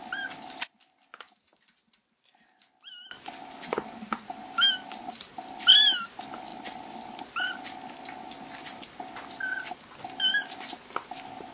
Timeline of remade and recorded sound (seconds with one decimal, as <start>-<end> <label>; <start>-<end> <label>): 0.0-11.5 recorded

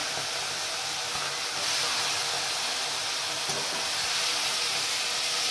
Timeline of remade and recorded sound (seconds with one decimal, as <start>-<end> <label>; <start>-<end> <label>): 0.0-5.5 recorded

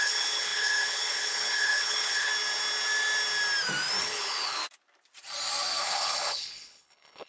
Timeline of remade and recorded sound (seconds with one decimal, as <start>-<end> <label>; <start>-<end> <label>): 0.0-2.3 remade; 2.3-4.0 recorded; 4.0-4.6 remade; 4.6-5.8 recorded; 5.8-7.3 remade

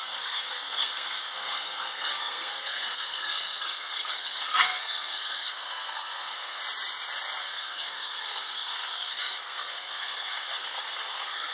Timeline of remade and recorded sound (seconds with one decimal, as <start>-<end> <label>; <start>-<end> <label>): 0.0-6.6 remade; 6.6-7.4 recorded; 7.4-11.5 remade